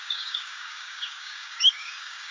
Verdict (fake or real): fake